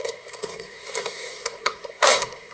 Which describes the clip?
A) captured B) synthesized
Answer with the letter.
B